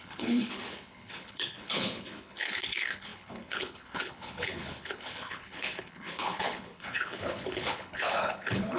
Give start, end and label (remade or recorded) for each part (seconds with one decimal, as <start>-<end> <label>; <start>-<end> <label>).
0.0-8.8 remade